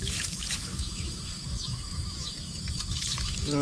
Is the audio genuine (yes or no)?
no